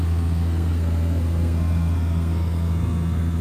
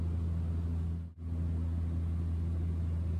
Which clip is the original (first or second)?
second